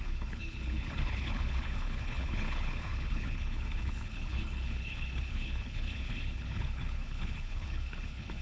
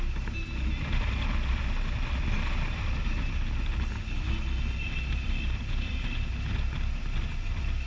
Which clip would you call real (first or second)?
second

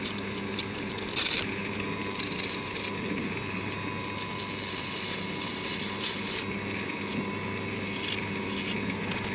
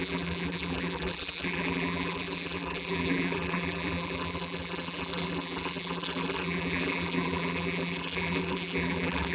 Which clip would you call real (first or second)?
first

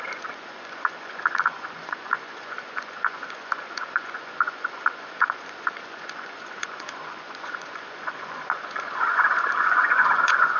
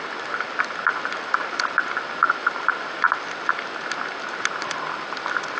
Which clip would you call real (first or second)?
second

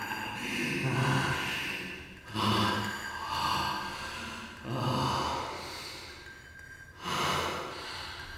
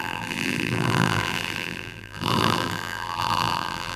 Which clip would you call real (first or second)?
first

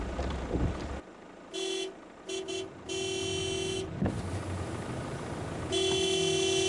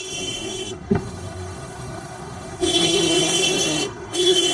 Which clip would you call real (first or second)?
first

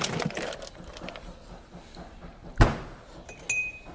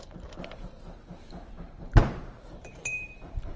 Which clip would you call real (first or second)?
first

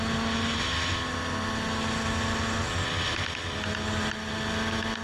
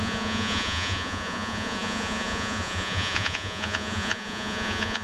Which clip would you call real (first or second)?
first